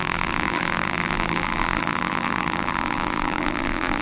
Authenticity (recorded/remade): remade